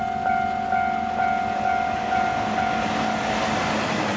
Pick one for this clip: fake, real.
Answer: real